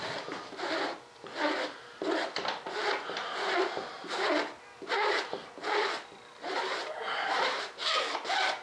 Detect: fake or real real